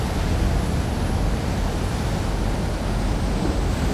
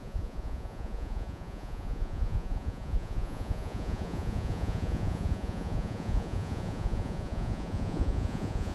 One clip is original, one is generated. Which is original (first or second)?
first